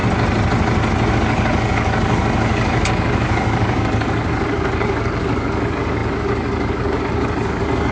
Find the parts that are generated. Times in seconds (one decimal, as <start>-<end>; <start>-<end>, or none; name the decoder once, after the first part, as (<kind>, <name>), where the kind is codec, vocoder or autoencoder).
1.1-7.9 (codec, DAC)